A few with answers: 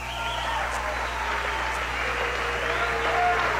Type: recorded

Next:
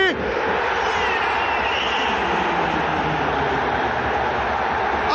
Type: recorded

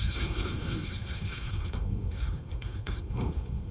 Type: remade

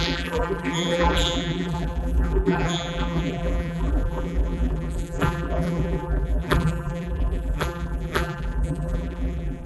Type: remade